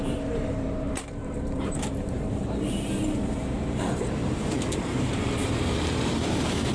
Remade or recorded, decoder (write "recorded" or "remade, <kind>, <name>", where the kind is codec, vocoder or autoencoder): remade, vocoder, BigVGAN v2